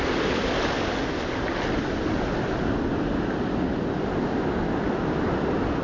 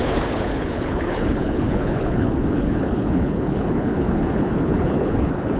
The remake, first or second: second